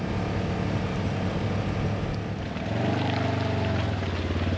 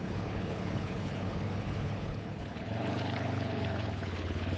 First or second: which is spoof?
second